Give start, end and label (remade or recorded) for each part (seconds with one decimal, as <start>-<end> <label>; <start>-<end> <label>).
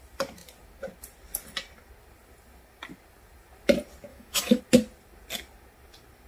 0.0-4.1 recorded; 4.1-4.6 remade; 4.6-6.3 recorded